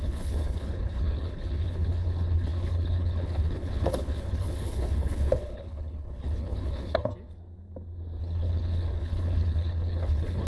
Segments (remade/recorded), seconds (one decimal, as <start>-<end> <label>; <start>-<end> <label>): 0.0-7.1 remade; 7.1-8.2 recorded; 8.2-10.5 remade